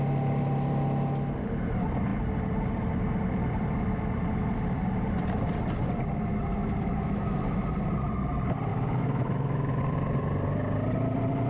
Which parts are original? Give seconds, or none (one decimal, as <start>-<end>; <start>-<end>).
0.0-6.9; 7.6-8.7; 9.8-11.5